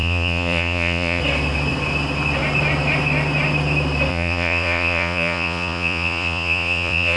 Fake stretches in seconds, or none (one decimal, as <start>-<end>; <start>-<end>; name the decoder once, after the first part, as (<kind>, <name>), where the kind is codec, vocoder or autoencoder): 0.0-1.2 (vocoder, Vocos); 4.1-7.2